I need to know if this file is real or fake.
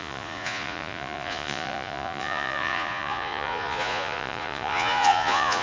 fake